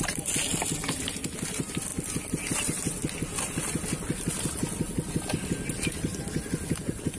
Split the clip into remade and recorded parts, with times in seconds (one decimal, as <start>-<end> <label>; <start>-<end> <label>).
0.0-7.2 recorded